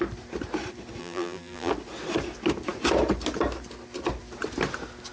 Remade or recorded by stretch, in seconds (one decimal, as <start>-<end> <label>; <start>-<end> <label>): 0.0-1.0 recorded; 1.0-1.7 remade; 1.7-5.1 recorded